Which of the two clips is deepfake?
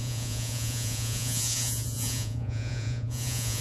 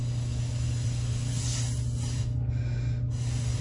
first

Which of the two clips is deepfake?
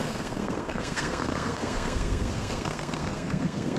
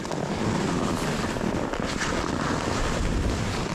first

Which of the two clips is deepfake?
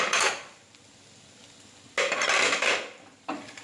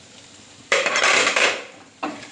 second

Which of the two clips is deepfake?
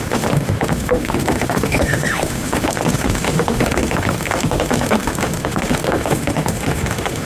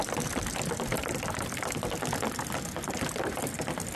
first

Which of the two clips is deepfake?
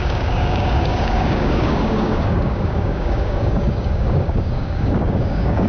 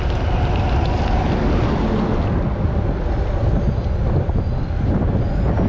first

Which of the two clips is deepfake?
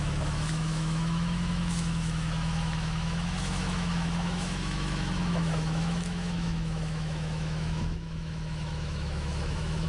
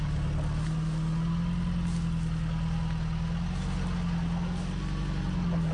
first